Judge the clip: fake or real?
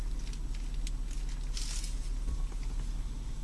real